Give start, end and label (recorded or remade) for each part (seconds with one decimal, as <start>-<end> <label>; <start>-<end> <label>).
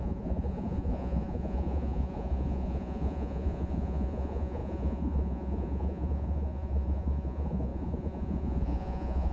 0.0-9.3 remade